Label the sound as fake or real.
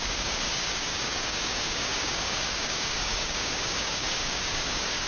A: fake